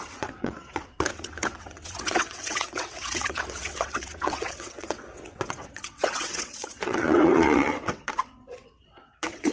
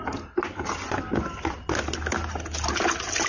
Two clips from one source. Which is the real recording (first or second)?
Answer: second